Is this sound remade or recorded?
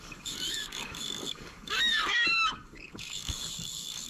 remade